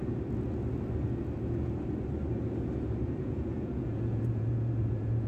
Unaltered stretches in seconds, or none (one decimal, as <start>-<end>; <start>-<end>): 0.0-3.2